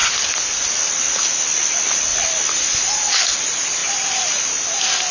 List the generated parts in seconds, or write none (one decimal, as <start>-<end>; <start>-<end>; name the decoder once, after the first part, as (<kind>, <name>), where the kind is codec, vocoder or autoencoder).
0.0-0.6 (vocoder, BigVGAN v2)